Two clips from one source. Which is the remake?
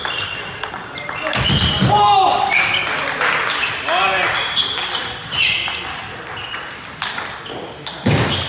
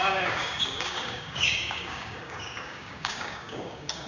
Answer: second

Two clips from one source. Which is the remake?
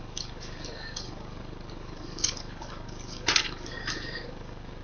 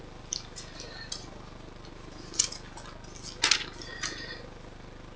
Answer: first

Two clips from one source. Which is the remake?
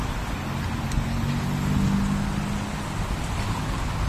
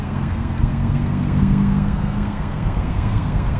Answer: second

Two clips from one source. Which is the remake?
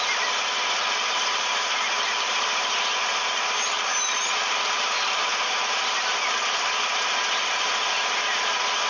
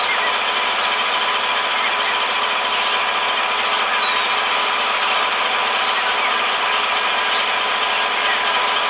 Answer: first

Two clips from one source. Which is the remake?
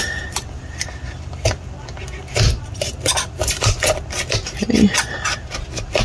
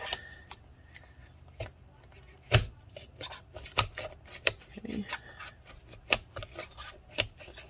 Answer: first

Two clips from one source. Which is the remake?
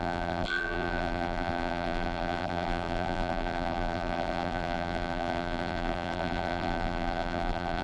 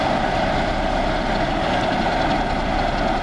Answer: first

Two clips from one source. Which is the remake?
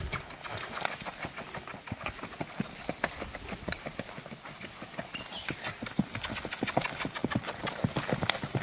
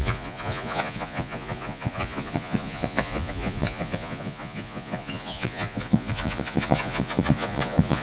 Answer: second